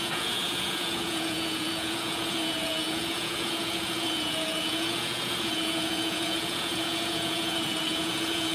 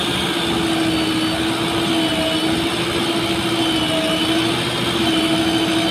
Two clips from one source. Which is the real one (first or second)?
second